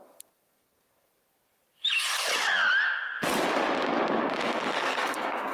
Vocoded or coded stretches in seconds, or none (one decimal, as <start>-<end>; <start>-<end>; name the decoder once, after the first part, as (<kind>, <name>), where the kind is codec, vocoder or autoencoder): 0.0-1.1 (codec, SNAC); 4.4-5.5